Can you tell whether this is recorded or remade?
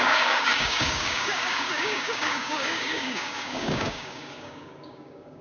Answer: remade